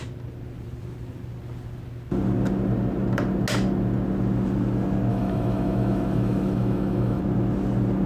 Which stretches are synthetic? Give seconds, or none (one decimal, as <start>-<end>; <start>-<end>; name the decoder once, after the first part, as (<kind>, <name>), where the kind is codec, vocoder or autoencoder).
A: 5.1-7.2 (autoencoder, DAC-VAE)